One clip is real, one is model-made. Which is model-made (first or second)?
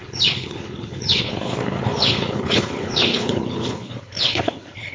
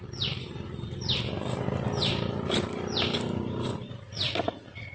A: first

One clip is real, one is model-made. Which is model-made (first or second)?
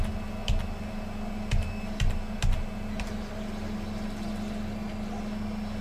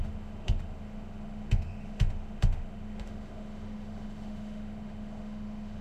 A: second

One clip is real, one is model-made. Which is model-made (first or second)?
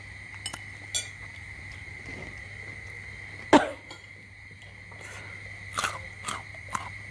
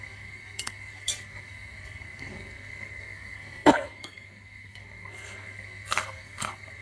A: second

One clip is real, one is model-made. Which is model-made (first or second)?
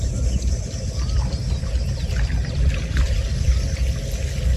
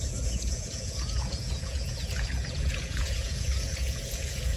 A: second